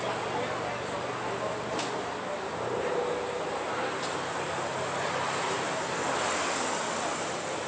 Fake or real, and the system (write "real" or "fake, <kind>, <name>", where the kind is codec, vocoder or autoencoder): real